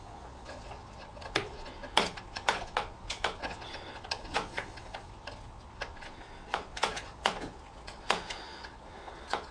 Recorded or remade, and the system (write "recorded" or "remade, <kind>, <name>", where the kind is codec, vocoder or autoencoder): remade, vocoder, Vocos